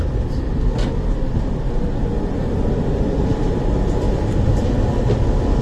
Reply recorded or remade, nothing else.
recorded